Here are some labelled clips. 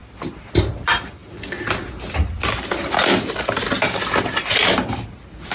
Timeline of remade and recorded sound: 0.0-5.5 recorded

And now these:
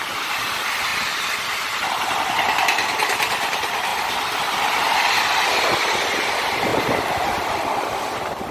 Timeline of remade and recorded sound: 0.0-0.9 recorded; 0.9-1.5 remade; 1.5-6.7 recorded; 6.7-8.0 remade; 8.0-8.5 recorded

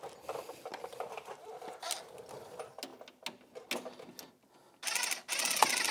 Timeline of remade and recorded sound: 0.0-0.7 recorded; 0.7-1.8 remade; 1.8-5.9 recorded

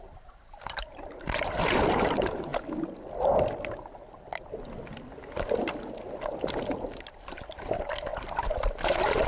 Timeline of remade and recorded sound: 0.0-2.5 remade; 2.5-7.3 recorded; 7.3-8.1 remade; 8.1-9.3 recorded

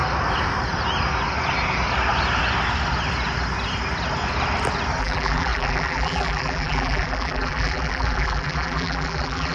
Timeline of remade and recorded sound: 0.0-5.0 recorded; 5.0-9.5 remade

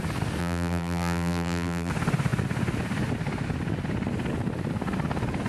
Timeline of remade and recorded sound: 0.0-0.4 recorded; 0.4-1.9 remade; 1.9-5.5 recorded

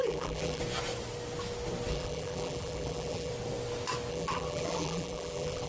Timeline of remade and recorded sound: 0.0-0.6 remade; 0.6-1.9 recorded; 1.9-3.3 remade; 3.3-4.1 recorded; 4.1-5.7 remade

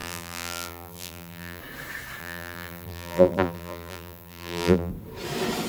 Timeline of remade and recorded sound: 0.0-1.6 remade; 1.6-2.2 recorded; 2.2-4.9 remade; 4.9-5.7 recorded